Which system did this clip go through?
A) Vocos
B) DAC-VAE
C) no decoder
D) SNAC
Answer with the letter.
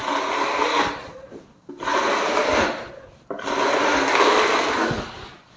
C